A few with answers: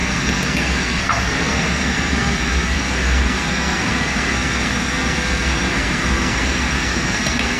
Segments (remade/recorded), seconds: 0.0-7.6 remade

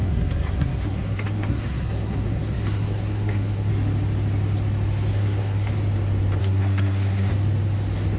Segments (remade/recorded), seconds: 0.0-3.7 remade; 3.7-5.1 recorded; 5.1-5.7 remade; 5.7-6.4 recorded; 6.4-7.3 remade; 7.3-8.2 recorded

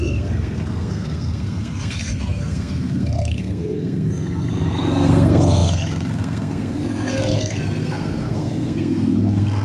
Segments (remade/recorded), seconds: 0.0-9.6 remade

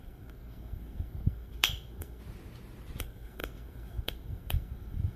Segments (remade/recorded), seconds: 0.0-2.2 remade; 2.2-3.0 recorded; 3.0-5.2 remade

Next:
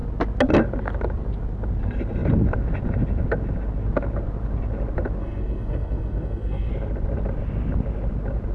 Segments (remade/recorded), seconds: 0.0-5.2 recorded; 5.2-6.7 remade; 6.7-8.5 recorded